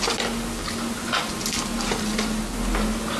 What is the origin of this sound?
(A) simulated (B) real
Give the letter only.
B